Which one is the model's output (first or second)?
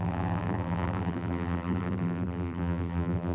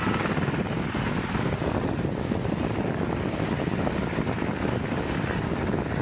first